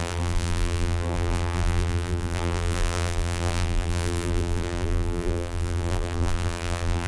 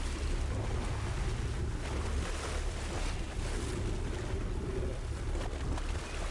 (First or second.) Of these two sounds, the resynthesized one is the first